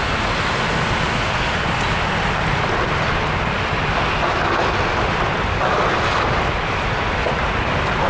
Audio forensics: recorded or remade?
recorded